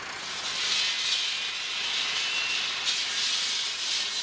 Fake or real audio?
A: real